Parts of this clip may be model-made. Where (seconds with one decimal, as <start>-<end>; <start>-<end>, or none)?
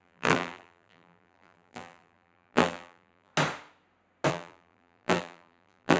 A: 0.0-3.3; 4.3-6.0